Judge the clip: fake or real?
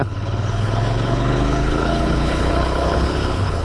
fake